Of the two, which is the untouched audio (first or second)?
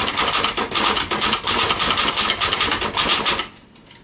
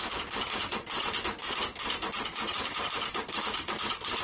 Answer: first